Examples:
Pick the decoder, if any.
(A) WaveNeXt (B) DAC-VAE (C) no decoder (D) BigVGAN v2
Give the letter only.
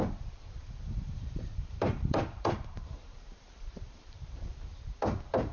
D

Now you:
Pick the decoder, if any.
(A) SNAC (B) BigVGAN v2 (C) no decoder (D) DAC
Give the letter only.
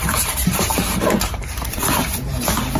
B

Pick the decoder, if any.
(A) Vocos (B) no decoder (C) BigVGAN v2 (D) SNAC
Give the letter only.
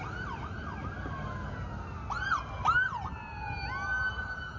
B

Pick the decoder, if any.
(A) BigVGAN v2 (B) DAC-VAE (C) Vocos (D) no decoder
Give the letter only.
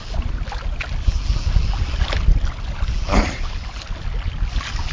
D